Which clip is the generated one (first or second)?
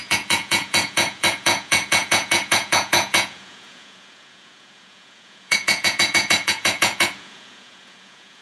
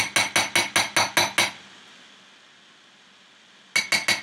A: first